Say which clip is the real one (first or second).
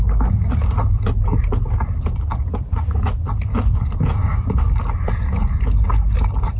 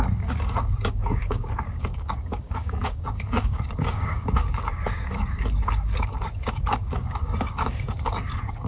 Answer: first